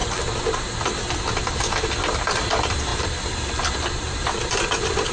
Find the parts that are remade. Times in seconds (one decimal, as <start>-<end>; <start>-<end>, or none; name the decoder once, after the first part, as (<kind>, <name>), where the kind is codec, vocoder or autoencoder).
0.8-5.1 (vocoder, BigVGAN v2)